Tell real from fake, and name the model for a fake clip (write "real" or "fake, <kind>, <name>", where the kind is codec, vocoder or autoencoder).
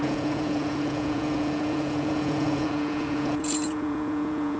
fake, vocoder, Vocos